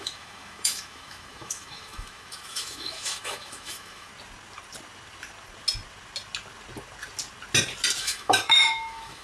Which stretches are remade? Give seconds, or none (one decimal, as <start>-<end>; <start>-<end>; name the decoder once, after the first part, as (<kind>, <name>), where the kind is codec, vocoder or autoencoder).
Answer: 0.0-4.1 (autoencoder, DAC-VAE); 8.0-9.2